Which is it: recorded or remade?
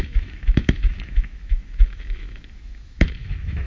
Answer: remade